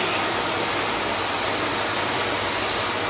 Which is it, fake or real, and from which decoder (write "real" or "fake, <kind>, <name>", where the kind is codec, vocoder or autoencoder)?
real